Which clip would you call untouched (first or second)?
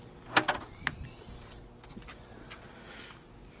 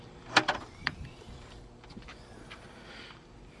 first